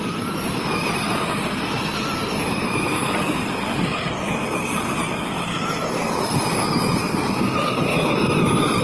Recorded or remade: recorded